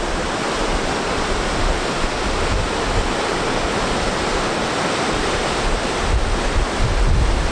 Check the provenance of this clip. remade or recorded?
recorded